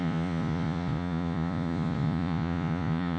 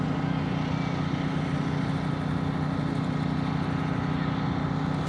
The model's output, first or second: first